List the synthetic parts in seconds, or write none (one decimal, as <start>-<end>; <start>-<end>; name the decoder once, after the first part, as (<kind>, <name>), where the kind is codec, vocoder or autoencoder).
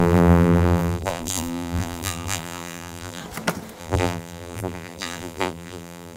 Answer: 0.0-3.2 (vocoder, BigVGAN v2); 3.8-6.2